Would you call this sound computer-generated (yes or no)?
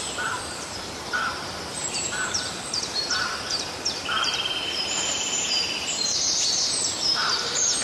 yes